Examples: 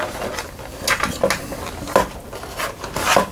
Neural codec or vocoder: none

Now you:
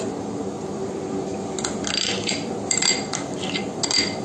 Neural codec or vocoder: none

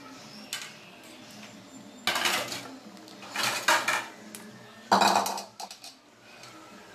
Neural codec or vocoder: none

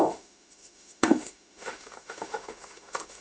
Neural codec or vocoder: autoencoder, DAC-VAE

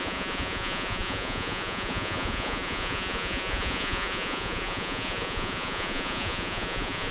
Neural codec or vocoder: vocoder, Vocos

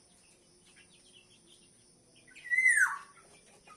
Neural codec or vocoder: none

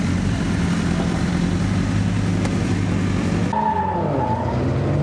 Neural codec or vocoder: none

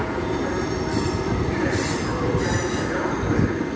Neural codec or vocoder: none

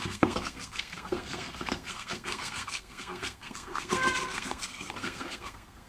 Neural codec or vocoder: codec, SNAC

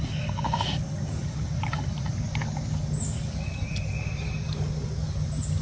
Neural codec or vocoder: none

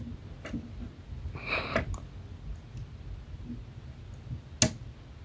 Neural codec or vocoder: none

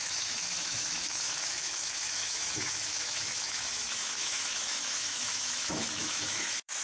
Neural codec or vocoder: autoencoder, DAC-VAE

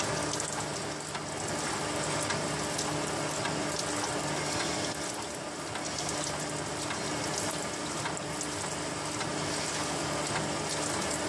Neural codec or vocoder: none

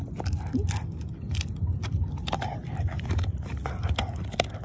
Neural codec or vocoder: none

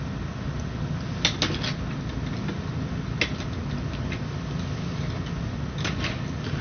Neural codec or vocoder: none